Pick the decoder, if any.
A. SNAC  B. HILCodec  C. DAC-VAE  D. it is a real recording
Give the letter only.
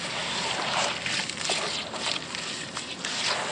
D